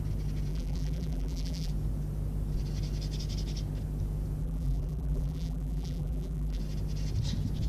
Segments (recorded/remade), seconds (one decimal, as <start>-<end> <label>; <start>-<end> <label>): 0.0-0.5 recorded; 0.5-1.7 remade; 1.7-4.4 recorded; 4.4-6.6 remade; 6.6-7.7 recorded

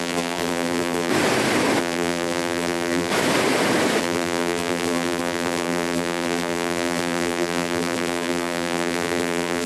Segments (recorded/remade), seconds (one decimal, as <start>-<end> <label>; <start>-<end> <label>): 0.0-1.1 remade; 1.1-1.8 recorded; 1.8-3.1 remade; 3.1-4.0 recorded; 4.0-9.7 remade

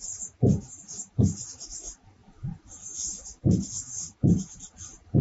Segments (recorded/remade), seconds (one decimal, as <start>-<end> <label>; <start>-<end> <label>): 0.0-5.2 remade

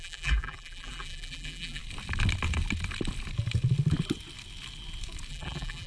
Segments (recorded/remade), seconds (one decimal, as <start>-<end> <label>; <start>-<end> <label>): 0.0-1.8 remade; 1.8-5.3 recorded; 5.3-5.9 remade